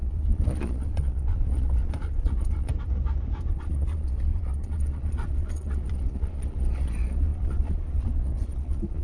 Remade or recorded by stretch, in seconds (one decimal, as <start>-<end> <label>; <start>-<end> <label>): 0.0-2.7 remade; 2.7-3.5 recorded; 3.5-9.0 remade